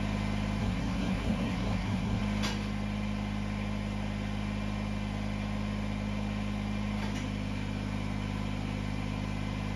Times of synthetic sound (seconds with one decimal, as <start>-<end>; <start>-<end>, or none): 0.6-2.2